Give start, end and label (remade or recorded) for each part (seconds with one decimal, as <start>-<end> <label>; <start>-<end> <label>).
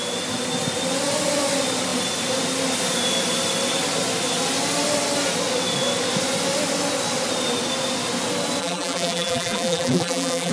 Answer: 0.0-8.6 recorded; 8.6-10.5 remade